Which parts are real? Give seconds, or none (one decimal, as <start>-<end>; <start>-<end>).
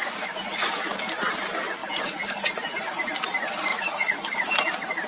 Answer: 1.0-1.8; 2.4-3.7; 4.6-5.1